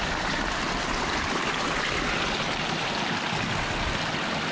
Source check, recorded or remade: recorded